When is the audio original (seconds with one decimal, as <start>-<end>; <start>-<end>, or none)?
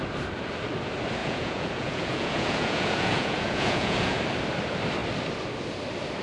0.0-1.2; 4.2-6.2